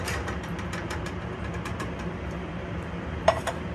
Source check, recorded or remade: remade